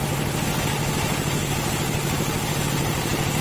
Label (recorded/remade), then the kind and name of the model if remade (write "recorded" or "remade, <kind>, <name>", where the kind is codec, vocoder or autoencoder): recorded